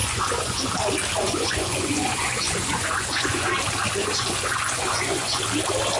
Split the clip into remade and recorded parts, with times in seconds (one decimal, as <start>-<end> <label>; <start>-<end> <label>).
0.0-0.6 remade; 0.6-1.2 recorded; 1.2-3.5 remade; 3.5-4.0 recorded; 4.0-5.4 remade; 5.4-6.0 recorded